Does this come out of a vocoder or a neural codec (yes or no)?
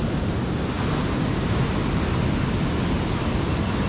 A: no